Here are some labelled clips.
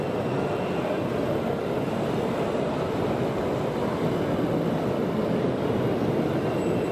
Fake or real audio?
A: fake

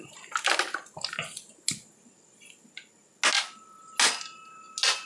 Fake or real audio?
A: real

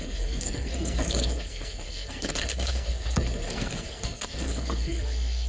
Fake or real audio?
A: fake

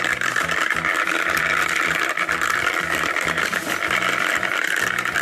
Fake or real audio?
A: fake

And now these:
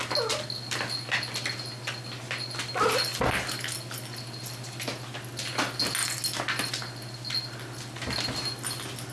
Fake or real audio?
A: real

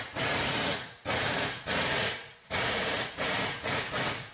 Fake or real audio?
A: fake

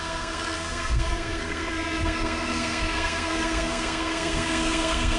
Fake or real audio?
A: fake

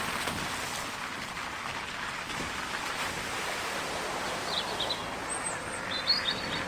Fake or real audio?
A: real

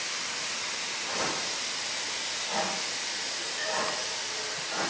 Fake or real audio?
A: real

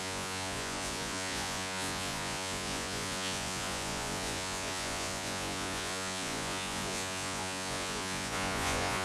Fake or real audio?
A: fake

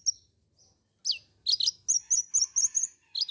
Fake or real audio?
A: real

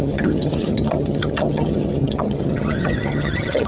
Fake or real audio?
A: fake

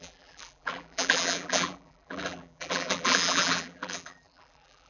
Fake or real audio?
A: fake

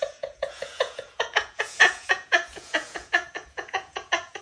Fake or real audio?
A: fake